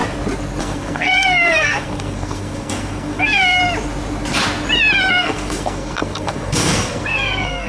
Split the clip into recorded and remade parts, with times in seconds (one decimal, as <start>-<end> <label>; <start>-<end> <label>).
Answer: 0.0-0.6 recorded; 0.6-3.6 remade; 3.6-5.1 recorded; 5.1-7.7 remade